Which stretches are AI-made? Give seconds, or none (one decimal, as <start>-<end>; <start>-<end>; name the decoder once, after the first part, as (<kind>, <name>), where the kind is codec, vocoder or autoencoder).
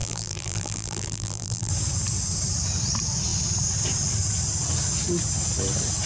0.0-1.7 (vocoder, BigVGAN v2)